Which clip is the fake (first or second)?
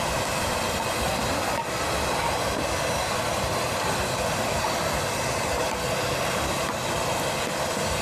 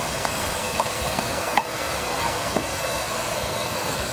second